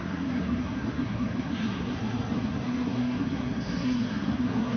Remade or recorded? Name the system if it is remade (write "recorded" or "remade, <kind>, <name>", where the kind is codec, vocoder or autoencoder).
remade, codec, SNAC